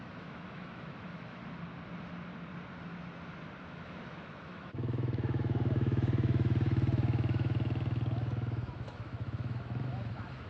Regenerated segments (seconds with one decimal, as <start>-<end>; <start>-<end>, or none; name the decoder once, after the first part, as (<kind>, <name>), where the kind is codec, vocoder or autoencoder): 0.0-1.4 (autoencoder, DAC-VAE); 3.6-10.5